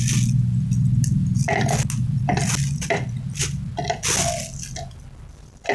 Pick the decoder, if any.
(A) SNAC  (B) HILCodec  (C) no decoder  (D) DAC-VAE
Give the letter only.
C